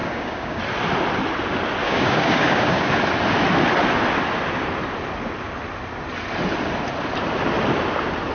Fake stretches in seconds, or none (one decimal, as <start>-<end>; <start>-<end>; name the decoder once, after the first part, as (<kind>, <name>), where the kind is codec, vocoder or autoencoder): 0.0-0.6 (codec, DAC); 1.8-2.9

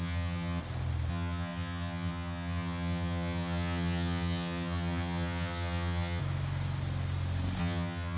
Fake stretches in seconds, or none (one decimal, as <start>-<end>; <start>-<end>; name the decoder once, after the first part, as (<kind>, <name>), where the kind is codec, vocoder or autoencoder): 0.0-0.6 (vocoder, HiFi-GAN); 1.1-6.2; 7.6-8.2

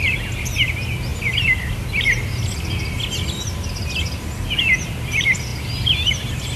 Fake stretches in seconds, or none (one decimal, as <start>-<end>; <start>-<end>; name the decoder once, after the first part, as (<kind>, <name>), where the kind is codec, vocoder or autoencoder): none

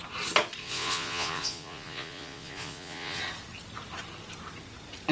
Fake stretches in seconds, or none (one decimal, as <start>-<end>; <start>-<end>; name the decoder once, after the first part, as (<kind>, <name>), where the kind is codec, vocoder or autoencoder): 0.6-3.2 (vocoder, Vocos)

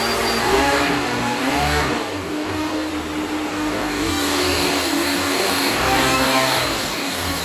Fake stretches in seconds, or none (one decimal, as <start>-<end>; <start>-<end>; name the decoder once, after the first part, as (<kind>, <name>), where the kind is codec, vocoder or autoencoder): 0.4-2.9 (codec, DAC); 3.5-7.4

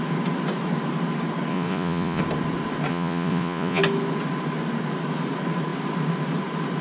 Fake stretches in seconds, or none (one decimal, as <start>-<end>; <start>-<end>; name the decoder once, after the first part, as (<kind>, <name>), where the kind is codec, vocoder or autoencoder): 1.5-2.2 (vocoder, Vocos); 2.9-3.8

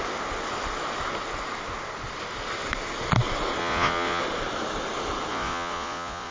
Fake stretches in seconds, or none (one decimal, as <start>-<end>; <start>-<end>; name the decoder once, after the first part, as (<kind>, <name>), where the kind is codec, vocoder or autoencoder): 3.6-4.2 (vocoder, Vocos); 5.3-6.3

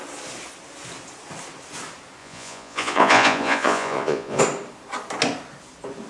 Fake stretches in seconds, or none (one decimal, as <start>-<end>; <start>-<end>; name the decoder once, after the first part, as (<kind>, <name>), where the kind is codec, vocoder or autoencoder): 2.2-4.4 (vocoder, Vocos)